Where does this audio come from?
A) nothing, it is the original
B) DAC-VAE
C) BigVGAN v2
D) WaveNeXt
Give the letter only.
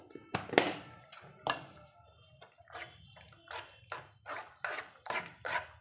A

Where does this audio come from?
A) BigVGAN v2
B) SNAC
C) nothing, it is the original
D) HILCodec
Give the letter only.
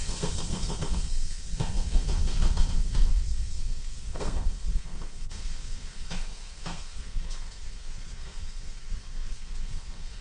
B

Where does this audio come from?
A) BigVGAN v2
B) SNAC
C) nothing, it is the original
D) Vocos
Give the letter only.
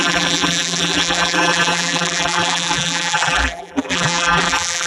A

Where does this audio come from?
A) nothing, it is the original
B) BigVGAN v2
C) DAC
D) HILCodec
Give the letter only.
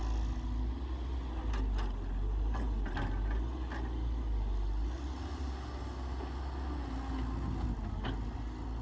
A